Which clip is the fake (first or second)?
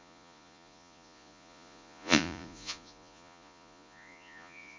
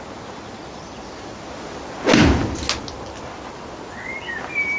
first